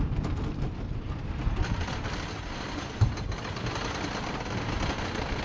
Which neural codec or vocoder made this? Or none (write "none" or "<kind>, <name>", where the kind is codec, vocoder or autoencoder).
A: none